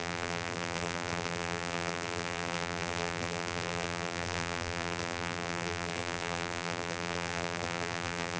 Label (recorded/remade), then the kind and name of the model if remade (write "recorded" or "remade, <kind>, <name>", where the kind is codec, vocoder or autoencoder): remade, vocoder, BigVGAN v2